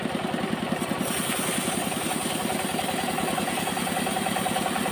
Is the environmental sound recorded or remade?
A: recorded